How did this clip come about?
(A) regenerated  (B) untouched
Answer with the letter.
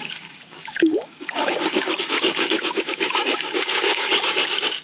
A